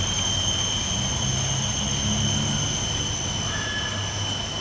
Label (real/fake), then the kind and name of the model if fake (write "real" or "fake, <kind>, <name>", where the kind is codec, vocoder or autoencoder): real